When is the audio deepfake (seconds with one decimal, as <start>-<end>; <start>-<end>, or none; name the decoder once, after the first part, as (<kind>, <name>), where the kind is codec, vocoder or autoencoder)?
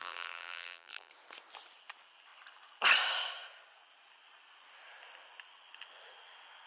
0.0-1.1 (vocoder, BigVGAN v2)